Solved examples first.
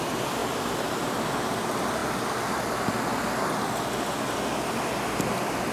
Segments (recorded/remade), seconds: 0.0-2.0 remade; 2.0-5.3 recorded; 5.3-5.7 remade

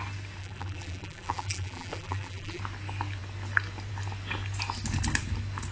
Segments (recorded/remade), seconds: 0.0-0.4 recorded; 0.4-2.6 remade; 2.6-5.7 recorded

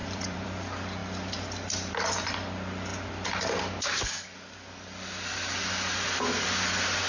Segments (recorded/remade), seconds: 0.0-0.6 remade; 0.6-2.9 recorded; 2.9-3.6 remade; 3.6-7.1 recorded

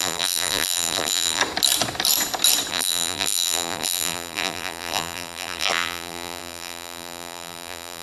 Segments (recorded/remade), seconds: 0.0-1.4 remade; 1.4-2.7 recorded; 2.7-8.0 remade

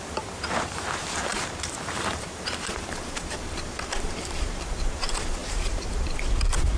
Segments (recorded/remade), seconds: 0.0-6.8 remade